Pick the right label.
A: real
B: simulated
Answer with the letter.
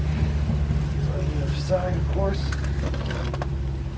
A